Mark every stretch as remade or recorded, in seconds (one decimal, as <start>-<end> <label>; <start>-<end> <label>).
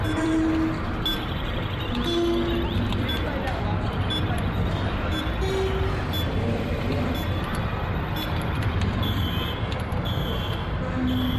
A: 0.0-11.4 recorded